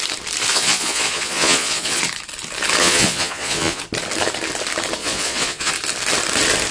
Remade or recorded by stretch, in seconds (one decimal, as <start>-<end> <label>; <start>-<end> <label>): 0.0-0.5 recorded; 0.5-2.0 remade; 2.0-2.8 recorded; 2.8-3.8 remade; 3.8-5.0 recorded; 5.0-5.7 remade; 5.7-6.7 recorded